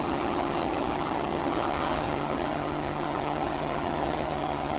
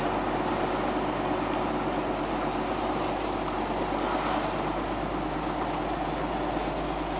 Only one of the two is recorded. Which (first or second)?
second